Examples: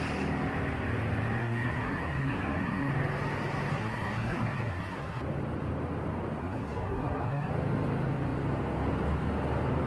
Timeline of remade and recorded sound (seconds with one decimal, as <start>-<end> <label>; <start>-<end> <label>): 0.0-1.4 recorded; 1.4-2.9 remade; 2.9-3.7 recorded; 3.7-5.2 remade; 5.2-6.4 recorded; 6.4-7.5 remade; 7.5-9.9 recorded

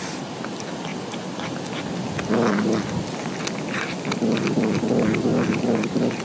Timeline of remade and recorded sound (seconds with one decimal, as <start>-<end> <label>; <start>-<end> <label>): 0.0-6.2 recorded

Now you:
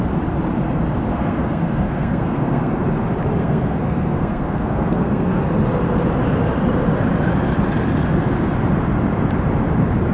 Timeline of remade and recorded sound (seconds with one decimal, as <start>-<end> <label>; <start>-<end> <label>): 0.0-1.1 recorded; 1.1-2.7 remade; 2.7-3.4 recorded; 3.4-5.4 remade; 5.4-10.1 recorded